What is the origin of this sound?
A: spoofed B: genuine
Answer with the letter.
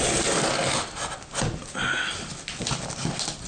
B